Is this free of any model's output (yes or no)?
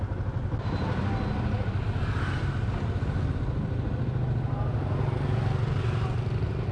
yes